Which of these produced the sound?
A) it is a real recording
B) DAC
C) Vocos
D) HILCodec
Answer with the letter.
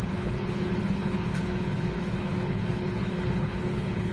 D